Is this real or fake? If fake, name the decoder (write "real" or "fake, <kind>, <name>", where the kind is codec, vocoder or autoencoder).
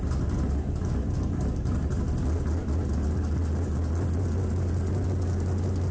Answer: real